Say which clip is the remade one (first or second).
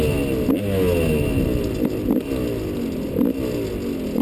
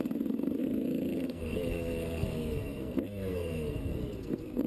second